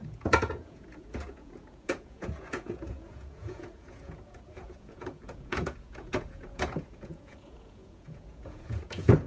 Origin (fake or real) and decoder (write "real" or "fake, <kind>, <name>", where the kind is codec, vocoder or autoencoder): fake, vocoder, Vocos